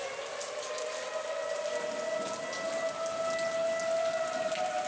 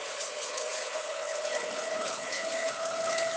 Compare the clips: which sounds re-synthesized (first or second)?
second